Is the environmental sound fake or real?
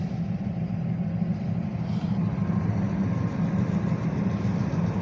real